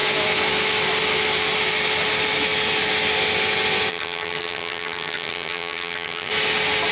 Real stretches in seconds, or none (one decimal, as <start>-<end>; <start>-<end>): 0.0-3.9; 6.3-6.9